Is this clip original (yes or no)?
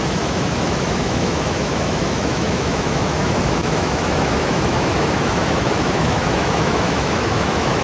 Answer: no